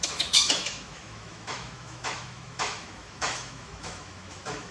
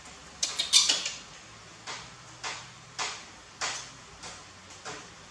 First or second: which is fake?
first